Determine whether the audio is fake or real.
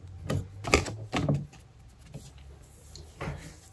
real